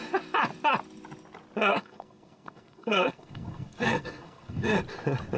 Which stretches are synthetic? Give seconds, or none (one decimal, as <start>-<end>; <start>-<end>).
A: 1.7-4.8